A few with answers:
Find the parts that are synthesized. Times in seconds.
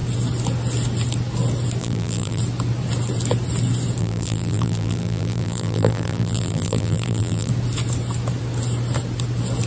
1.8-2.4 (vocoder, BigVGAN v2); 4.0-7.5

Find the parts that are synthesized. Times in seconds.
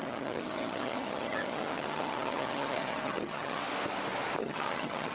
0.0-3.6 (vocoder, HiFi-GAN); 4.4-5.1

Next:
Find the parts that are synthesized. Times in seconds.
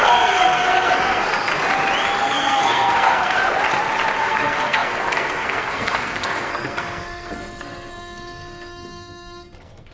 0.0-1.5 (codec, SNAC); 2.2-3.4; 4.2-9.9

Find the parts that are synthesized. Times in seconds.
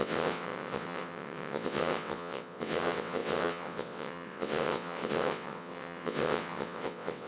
0.0-7.3 (vocoder, WaveNeXt)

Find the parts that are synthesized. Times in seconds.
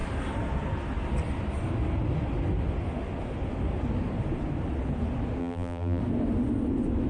5.4-6.0 (vocoder, BigVGAN v2)